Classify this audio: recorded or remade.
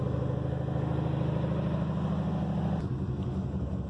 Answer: recorded